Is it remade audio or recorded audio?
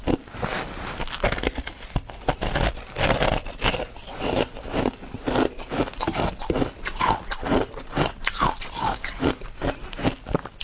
recorded